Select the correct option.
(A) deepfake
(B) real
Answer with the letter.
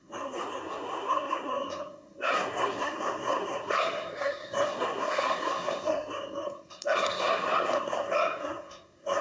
A